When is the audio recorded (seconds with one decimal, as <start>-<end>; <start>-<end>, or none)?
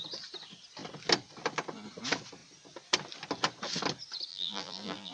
0.0-4.3